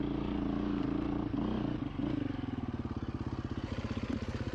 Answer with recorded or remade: recorded